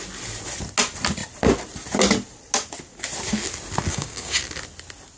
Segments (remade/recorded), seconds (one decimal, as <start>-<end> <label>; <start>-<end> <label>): 0.0-3.9 recorded; 3.9-4.4 remade; 4.4-5.2 recorded